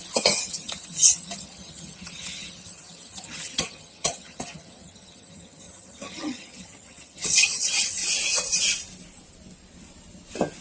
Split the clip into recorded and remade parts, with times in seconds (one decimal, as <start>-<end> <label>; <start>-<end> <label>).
0.0-8.0 remade; 8.0-10.6 recorded